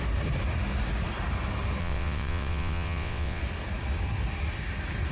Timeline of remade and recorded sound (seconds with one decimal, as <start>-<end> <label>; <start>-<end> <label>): 0.0-1.8 recorded; 1.8-3.4 remade; 3.4-5.1 recorded